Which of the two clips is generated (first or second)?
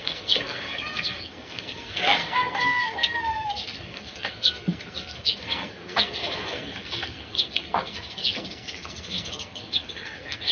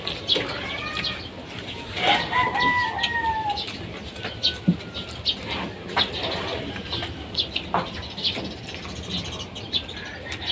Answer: first